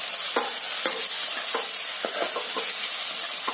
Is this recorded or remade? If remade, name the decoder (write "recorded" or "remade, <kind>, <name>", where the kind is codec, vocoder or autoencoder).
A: recorded